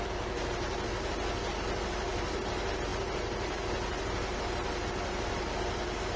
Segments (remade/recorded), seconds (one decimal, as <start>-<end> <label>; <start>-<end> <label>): 0.0-6.2 recorded

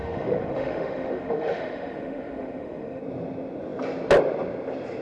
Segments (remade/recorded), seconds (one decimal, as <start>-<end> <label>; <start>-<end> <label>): 0.0-3.0 remade; 3.0-5.0 recorded

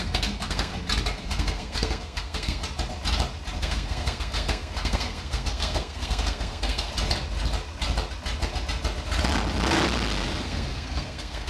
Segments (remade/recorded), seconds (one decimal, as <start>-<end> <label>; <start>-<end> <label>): 0.0-0.7 remade; 0.7-1.2 recorded; 1.2-2.6 remade; 2.6-3.6 recorded; 3.6-6.9 remade; 6.9-10.4 recorded; 10.4-11.5 remade

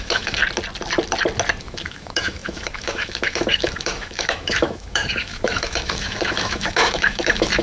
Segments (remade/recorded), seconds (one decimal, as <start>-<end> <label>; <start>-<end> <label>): 0.0-0.4 remade; 0.4-1.6 recorded; 1.6-7.6 remade

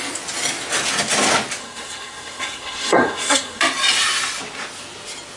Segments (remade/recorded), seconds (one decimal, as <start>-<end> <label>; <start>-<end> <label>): 0.0-1.6 recorded; 1.6-3.6 remade; 3.6-5.4 recorded

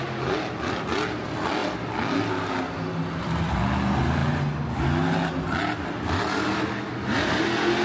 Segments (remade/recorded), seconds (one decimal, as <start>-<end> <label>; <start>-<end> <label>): 0.0-7.8 recorded

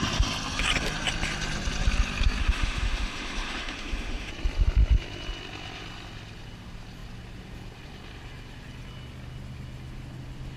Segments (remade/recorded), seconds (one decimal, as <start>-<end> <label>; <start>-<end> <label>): 0.0-2.4 recorded; 2.4-4.3 remade; 4.3-10.6 recorded

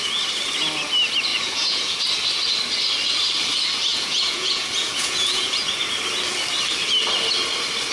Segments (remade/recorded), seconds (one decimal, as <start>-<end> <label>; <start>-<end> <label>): 0.0-1.3 recorded; 1.3-2.0 remade; 2.0-3.9 recorded; 3.9-5.7 remade; 5.7-7.9 recorded